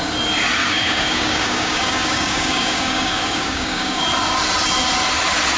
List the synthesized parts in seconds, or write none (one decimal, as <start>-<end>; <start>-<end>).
0.6-4.0